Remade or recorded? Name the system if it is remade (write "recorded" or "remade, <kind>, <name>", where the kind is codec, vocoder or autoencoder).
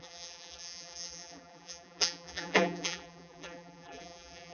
remade, vocoder, BigVGAN v2